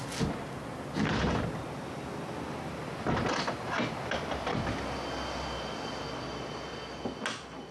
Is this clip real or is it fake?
real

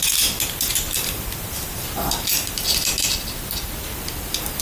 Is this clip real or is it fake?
real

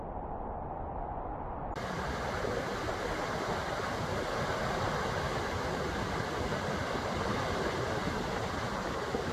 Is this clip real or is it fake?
real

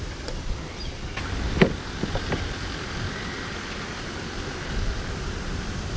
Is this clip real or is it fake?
fake